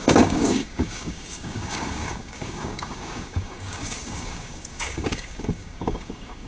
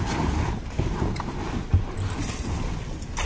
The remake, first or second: first